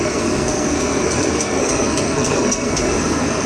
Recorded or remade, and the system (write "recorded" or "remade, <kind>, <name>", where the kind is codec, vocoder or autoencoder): remade, codec, SNAC